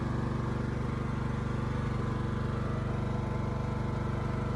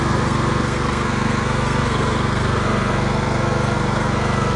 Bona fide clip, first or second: first